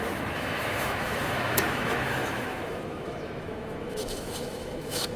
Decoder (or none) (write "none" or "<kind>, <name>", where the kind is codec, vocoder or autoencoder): autoencoder, DAC-VAE